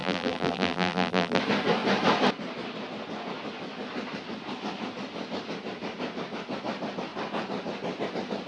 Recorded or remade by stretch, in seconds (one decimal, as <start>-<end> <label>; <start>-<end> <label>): 0.0-1.4 remade; 1.4-8.5 recorded